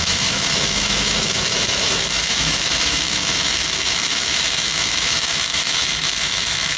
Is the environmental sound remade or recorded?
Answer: remade